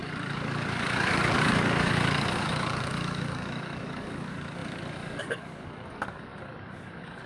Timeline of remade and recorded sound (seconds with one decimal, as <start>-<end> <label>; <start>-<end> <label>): 0.0-7.3 remade